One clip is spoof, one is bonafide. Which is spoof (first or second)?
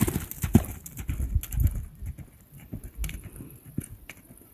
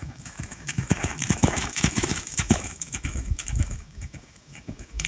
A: second